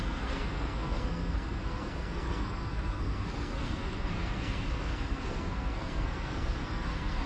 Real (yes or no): no